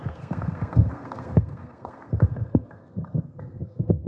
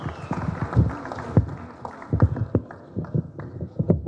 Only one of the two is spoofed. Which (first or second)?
first